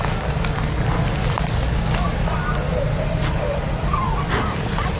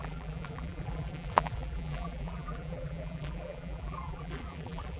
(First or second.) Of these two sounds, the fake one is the second